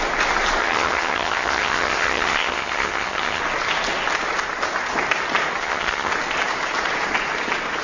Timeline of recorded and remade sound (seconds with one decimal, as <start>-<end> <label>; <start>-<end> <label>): 0.0-0.6 recorded; 0.6-3.4 remade; 3.4-5.6 recorded; 5.6-6.1 remade; 6.1-7.8 recorded